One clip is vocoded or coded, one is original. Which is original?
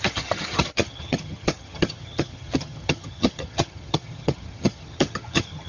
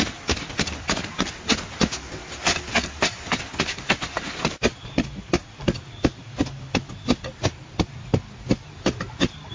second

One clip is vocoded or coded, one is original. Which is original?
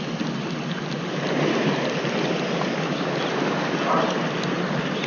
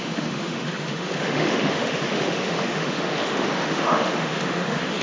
first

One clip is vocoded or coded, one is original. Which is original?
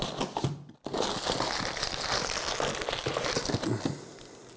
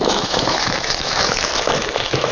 first